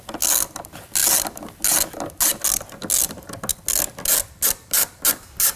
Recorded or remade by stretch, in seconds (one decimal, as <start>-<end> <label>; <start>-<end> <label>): 0.0-5.6 recorded